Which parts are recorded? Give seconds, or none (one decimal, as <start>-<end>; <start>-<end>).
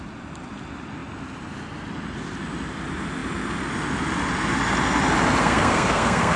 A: 0.0-5.4